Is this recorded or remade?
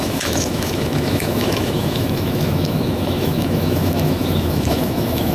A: remade